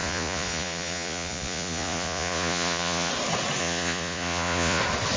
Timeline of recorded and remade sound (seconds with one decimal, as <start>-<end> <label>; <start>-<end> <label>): 0.0-3.1 remade; 3.1-3.6 recorded; 3.6-4.8 remade; 4.8-5.2 recorded